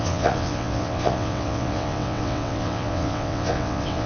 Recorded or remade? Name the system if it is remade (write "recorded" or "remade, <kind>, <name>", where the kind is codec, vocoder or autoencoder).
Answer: remade, vocoder, WaveNeXt